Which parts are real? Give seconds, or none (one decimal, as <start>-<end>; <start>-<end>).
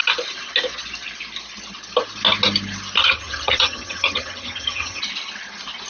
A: 0.0-3.0; 5.0-5.9